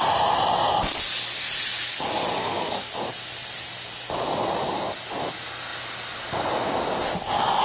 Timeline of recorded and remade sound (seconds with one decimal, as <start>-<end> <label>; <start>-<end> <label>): 0.0-2.4 recorded; 2.4-2.9 remade; 2.9-7.6 recorded